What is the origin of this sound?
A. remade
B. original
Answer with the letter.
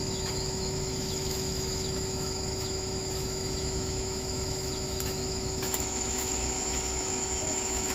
A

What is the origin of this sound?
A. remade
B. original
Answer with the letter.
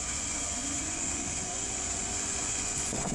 A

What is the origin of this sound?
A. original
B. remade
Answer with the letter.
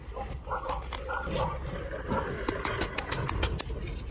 A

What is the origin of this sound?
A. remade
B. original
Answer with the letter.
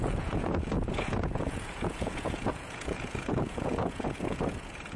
A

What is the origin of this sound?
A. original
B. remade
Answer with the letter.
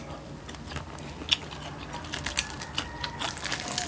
A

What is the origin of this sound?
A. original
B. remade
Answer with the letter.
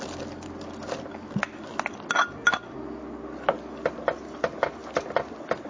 A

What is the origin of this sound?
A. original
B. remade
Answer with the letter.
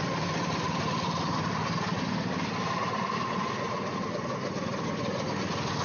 A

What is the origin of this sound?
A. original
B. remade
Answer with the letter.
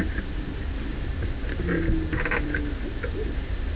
A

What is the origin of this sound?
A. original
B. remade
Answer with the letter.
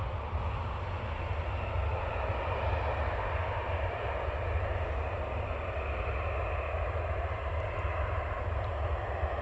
A